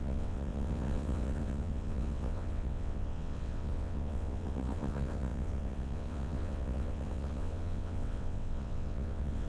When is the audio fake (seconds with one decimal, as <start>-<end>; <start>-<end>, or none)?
0.0-9.5